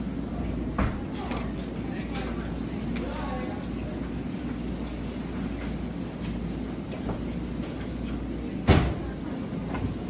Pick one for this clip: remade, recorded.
recorded